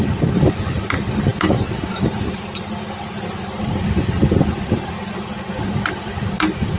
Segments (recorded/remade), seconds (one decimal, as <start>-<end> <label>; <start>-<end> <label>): 0.0-6.8 recorded